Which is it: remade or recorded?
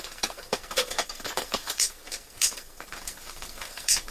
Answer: remade